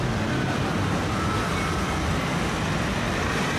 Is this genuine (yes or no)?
yes